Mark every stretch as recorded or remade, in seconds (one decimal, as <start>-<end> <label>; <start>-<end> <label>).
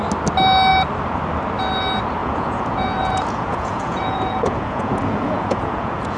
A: 0.0-2.2 recorded; 2.2-6.2 remade